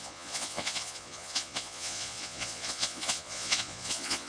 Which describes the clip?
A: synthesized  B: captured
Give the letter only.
A